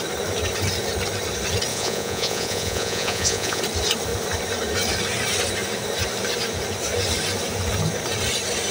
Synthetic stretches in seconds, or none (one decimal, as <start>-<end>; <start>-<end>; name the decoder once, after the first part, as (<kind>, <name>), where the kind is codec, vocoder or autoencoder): 1.7-3.6 (vocoder, Vocos)